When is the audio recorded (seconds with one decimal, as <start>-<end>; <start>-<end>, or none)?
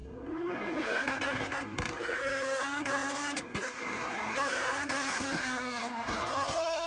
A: none